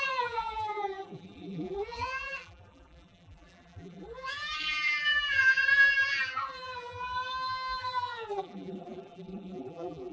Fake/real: fake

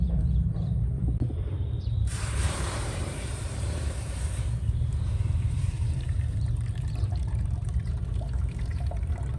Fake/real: fake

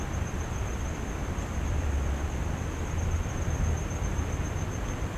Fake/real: real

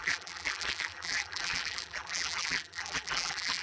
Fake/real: fake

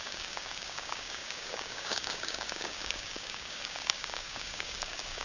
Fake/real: fake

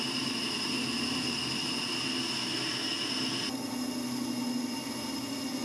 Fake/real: real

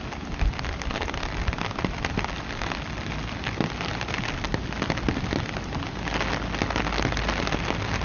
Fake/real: real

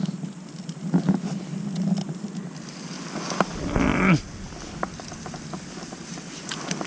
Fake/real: real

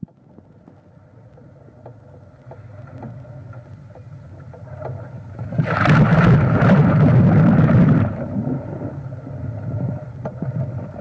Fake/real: real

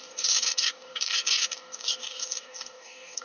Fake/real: fake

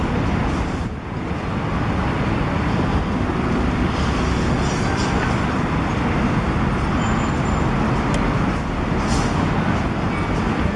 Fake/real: real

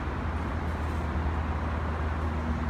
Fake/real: real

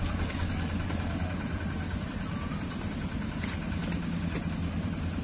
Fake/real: real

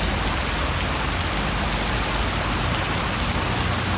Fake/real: real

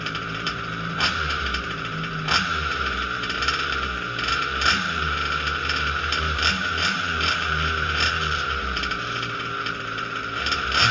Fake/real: fake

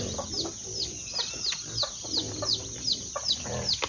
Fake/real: real